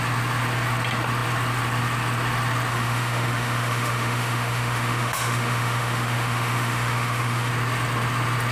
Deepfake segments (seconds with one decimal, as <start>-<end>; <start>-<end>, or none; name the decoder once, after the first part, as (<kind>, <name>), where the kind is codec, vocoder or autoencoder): 2.7-7.5 (autoencoder, DAC-VAE)